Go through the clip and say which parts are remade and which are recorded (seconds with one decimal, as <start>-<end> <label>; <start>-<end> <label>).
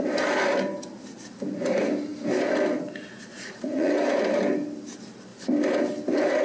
0.0-3.3 recorded; 3.3-3.9 remade; 3.9-6.4 recorded